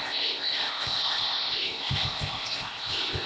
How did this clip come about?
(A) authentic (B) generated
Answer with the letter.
B